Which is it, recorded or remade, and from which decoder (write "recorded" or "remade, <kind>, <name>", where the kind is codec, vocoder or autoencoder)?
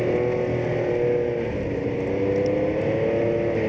recorded